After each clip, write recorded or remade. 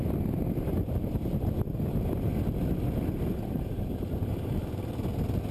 recorded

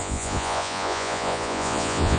remade